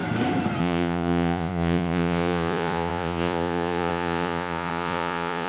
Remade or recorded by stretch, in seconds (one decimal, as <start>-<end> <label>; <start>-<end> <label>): 0.0-0.6 recorded; 0.6-5.5 remade